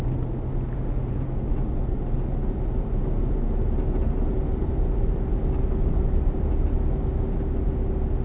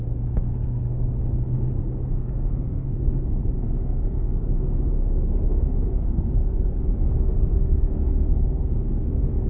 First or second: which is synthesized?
second